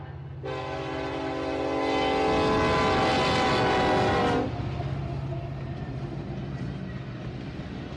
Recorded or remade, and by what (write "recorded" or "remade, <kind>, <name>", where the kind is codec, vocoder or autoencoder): recorded